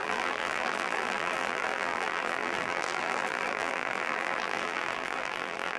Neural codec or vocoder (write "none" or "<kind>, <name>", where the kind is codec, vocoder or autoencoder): vocoder, BigVGAN v2